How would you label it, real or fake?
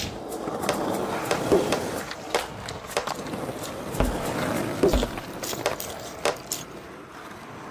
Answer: real